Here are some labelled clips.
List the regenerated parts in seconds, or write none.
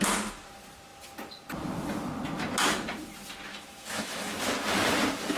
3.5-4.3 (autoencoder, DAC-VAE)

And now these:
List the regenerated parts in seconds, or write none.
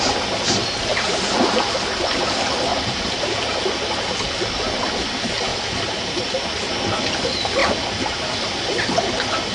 2.7-3.4 (vocoder, BigVGAN v2); 5.5-6.2